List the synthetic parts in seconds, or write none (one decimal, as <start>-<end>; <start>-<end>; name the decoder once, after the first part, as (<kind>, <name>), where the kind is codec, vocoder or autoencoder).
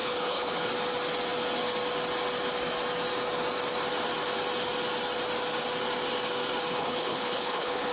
0.0-0.7 (codec, HILCodec); 6.7-7.9